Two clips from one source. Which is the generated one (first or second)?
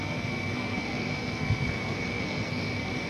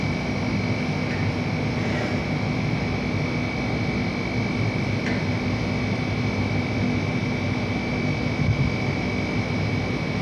first